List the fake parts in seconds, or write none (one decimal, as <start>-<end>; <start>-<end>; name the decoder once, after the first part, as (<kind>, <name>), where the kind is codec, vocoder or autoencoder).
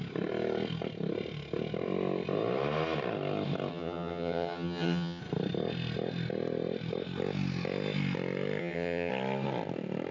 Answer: 3.7-5.2 (vocoder, HiFi-GAN); 8.6-9.1